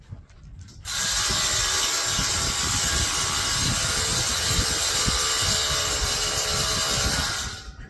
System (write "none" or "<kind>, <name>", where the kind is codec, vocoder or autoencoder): vocoder, BigVGAN v2